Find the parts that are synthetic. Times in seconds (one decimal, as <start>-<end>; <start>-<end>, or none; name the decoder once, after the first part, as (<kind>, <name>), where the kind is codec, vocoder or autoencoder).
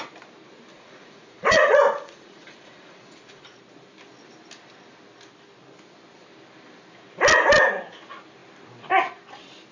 0.7-3.6 (vocoder, Vocos)